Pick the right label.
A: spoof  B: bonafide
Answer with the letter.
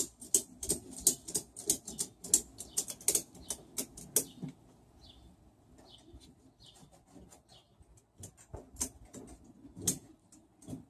B